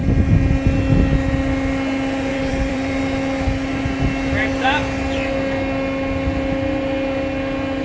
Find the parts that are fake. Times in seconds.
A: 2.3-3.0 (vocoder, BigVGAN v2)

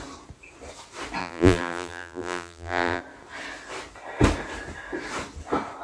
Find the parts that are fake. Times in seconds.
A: 1.2-3.0 (vocoder, BigVGAN v2)

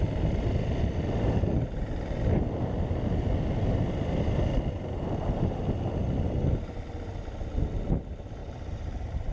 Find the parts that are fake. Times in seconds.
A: 8.4-9.3 (vocoder, BigVGAN v2)